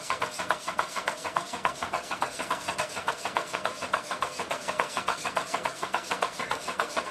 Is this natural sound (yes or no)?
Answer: no